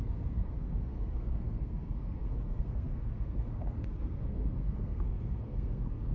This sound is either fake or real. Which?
fake